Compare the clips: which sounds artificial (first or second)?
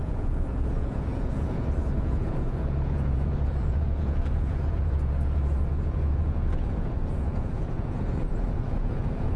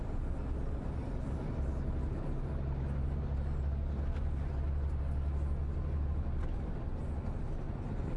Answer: first